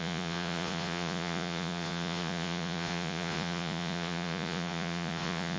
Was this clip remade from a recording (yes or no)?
yes